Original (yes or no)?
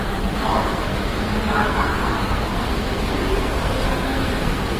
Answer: no